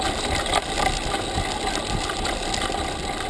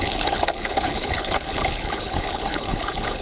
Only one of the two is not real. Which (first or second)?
second